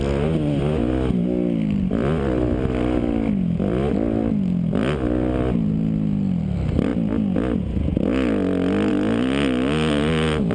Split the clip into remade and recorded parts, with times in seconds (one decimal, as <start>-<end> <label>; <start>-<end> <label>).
0.0-10.5 recorded